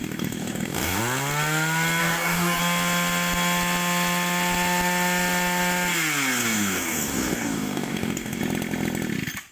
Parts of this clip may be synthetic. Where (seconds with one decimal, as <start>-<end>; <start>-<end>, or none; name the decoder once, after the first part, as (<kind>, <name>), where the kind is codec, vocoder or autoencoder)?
0.0-1.0 (codec, DAC); 2.0-2.6; 6.4-8.4